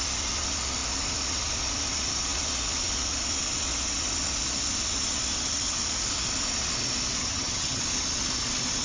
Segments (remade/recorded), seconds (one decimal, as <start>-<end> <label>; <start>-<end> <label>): 0.0-7.2 recorded; 7.2-7.8 remade; 7.8-8.8 recorded